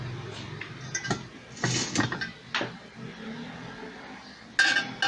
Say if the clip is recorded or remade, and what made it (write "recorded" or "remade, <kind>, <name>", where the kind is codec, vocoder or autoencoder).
recorded